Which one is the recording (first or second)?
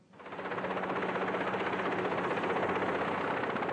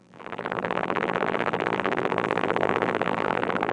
first